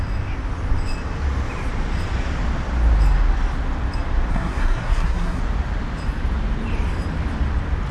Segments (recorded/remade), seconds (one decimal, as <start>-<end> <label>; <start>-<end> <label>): 0.0-4.3 recorded; 4.3-5.4 remade; 5.4-7.9 recorded

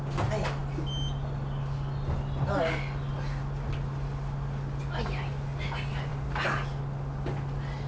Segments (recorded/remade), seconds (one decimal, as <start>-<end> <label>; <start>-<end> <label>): 0.0-7.9 recorded

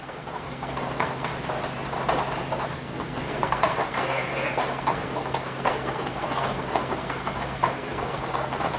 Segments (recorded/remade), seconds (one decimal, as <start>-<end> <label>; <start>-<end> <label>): 0.0-1.3 remade; 1.3-2.6 recorded; 2.6-8.8 remade